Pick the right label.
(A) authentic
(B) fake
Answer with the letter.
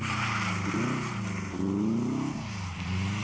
A